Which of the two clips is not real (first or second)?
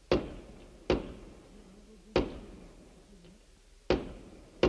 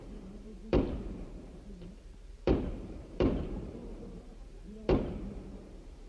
second